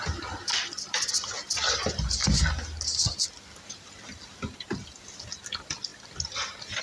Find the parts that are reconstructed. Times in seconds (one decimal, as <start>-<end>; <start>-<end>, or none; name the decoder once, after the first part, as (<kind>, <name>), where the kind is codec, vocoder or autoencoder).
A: none